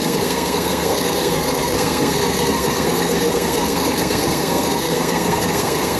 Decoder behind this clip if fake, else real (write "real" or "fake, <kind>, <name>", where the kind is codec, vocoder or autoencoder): fake, codec, SNAC